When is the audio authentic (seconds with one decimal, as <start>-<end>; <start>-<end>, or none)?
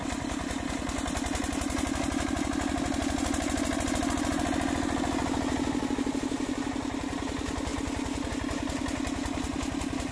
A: 0.0-10.1